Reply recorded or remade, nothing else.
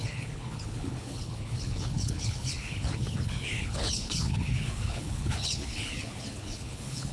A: remade